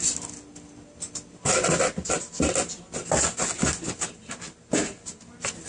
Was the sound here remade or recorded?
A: recorded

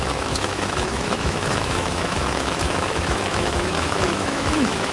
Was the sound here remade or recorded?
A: remade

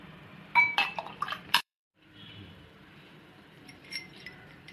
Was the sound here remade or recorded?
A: remade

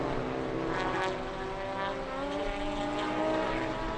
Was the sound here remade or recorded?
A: recorded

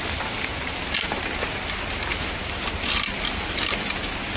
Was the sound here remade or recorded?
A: recorded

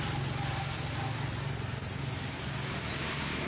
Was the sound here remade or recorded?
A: recorded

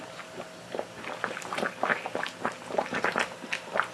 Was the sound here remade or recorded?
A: recorded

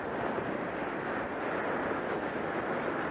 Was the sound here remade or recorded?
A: recorded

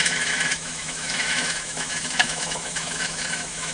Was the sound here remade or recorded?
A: remade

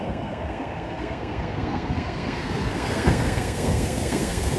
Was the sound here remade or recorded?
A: remade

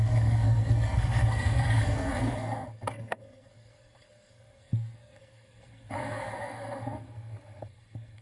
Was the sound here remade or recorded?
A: remade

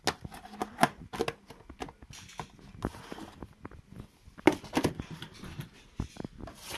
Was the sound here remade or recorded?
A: recorded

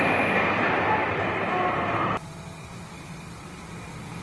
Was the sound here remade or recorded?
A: recorded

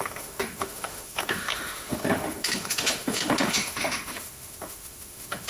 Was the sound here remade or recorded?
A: remade